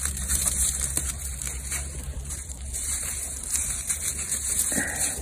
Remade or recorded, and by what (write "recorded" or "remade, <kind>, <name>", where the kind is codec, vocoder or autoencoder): remade, vocoder, BigVGAN v2